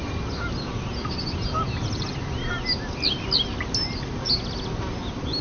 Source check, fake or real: real